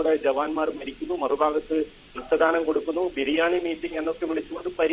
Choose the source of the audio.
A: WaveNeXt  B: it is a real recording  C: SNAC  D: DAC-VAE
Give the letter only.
A